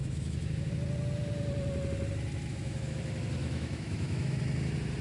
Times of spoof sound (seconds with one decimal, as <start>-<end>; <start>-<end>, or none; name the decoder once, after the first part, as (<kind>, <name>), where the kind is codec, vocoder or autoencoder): 0.0-0.7 (autoencoder, DAC-VAE); 2.5-3.0; 3.4-4.4

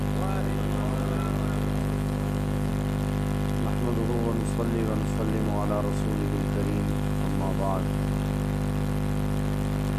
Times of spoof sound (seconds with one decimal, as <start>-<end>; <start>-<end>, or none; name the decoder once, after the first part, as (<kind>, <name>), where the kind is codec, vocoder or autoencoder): 1.8-2.7 (autoencoder, DAC-VAE); 6.9-8.1

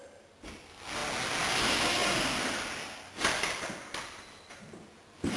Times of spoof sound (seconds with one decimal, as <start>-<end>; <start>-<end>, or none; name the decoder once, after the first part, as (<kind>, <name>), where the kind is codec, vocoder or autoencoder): none

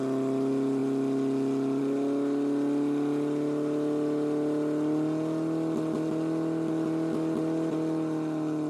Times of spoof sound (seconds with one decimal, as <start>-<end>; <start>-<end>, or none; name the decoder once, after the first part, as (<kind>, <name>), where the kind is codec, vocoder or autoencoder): none

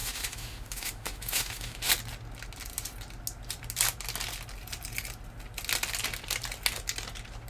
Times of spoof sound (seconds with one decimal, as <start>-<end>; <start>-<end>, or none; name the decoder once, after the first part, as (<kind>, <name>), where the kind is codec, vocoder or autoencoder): 0.0-1.9 (autoencoder, DAC-VAE)